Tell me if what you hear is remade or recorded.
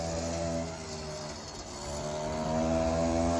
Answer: recorded